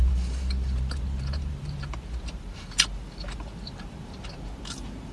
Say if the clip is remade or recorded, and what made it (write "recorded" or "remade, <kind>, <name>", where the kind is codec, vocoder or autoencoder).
remade, vocoder, BigVGAN v2